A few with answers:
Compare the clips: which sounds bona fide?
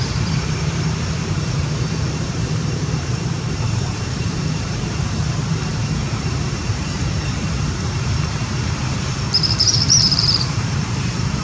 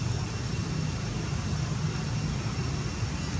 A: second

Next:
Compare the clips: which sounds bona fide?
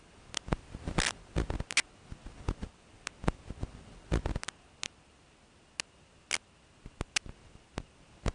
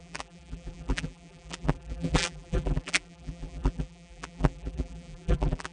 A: first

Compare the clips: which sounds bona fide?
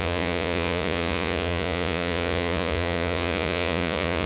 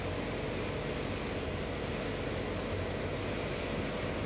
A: second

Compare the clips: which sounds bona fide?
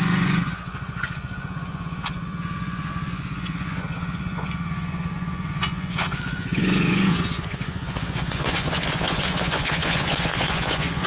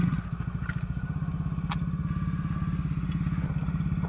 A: second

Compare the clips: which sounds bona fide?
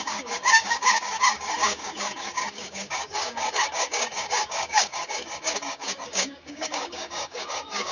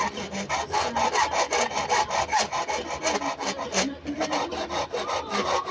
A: second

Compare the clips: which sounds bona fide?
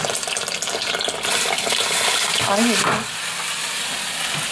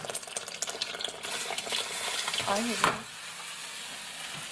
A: second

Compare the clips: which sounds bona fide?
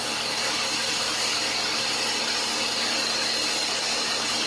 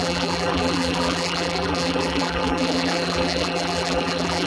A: first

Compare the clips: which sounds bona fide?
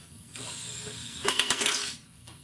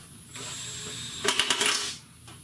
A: second